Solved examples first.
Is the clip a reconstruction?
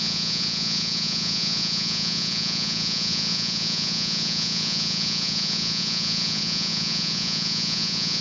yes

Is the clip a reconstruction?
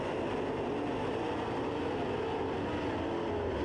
no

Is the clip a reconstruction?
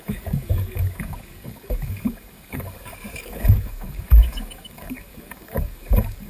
yes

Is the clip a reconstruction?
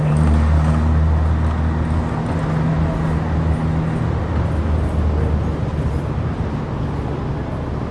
no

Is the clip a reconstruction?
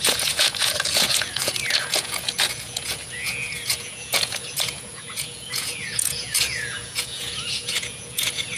yes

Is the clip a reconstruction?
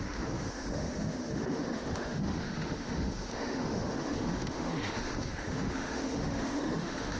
yes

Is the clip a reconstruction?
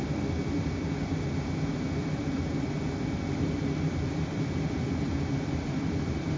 yes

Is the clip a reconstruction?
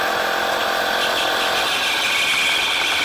no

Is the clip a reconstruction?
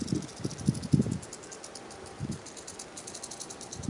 no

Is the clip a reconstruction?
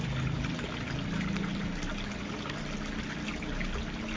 no